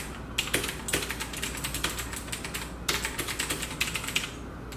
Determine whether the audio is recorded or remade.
recorded